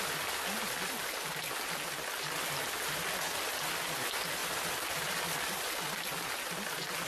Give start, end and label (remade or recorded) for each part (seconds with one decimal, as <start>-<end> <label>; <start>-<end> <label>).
0.0-4.4 recorded; 4.4-6.3 remade; 6.3-7.1 recorded